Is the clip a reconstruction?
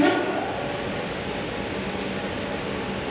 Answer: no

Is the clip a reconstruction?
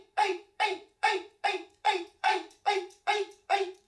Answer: yes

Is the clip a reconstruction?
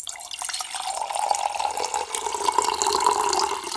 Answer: no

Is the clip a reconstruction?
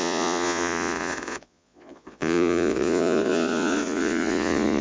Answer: yes